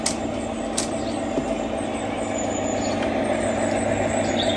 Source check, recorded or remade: recorded